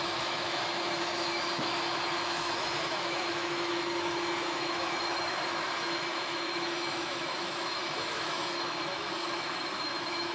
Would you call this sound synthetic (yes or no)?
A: yes